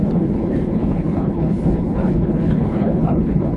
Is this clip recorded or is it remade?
remade